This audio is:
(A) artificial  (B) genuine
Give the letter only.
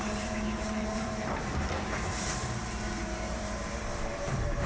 A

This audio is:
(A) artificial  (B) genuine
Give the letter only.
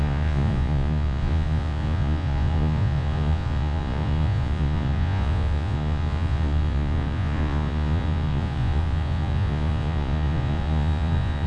A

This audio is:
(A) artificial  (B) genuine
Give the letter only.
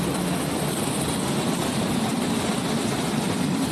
B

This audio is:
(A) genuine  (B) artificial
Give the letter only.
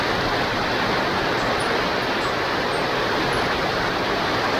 A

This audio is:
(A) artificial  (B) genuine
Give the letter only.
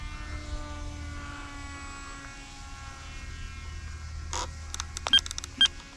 B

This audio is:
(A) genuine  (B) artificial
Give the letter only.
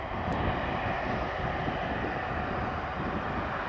A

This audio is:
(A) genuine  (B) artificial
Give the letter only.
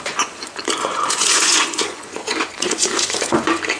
B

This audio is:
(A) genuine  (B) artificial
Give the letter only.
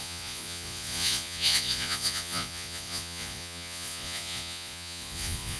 B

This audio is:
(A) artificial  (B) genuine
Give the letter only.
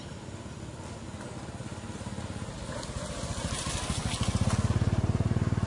B